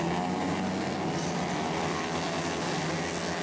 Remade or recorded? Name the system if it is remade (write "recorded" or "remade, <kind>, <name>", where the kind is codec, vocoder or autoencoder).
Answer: recorded